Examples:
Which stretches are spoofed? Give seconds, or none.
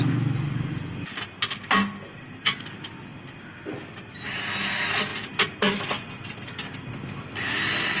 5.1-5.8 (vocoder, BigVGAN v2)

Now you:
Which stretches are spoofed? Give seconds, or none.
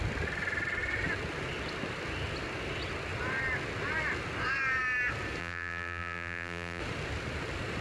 5.4-6.8 (vocoder, BigVGAN v2)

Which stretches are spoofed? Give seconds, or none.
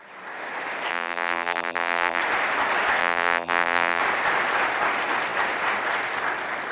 0.9-2.2 (vocoder, BigVGAN v2); 3.0-4.0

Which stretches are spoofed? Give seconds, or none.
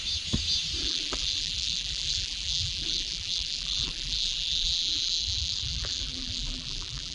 0.8-7.1 (vocoder, BigVGAN v2)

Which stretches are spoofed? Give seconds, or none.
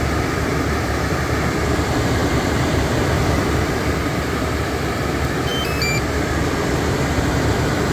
0.0-5.5 (vocoder, BigVGAN v2); 6.0-7.9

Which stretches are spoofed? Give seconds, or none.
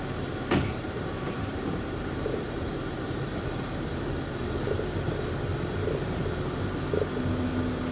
0.7-5.1 (vocoder, BigVGAN v2); 5.5-6.2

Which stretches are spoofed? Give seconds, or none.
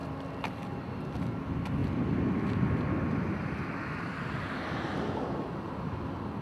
none